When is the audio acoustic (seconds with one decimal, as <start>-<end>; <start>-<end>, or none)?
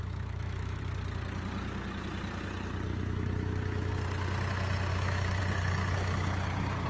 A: 0.8-2.9; 3.9-4.9; 5.4-6.9